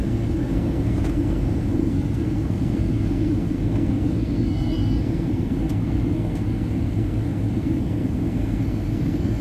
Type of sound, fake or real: fake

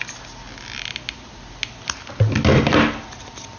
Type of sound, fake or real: real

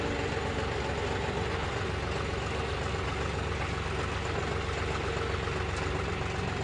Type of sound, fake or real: real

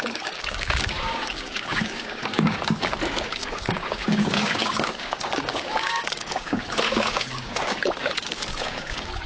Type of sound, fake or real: fake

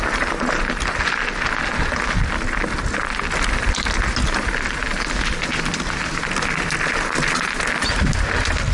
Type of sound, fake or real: real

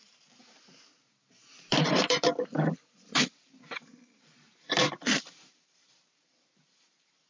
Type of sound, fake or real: fake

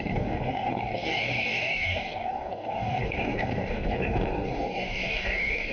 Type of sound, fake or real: fake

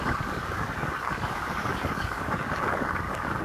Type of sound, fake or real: fake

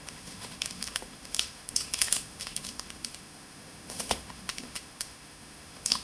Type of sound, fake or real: fake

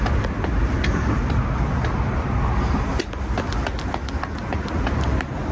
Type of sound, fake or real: real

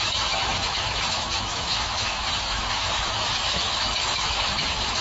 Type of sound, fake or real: fake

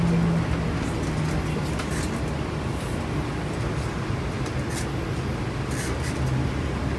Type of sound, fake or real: real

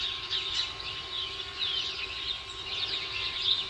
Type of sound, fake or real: real